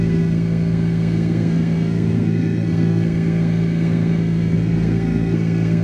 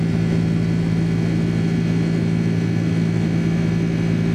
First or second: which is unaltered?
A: second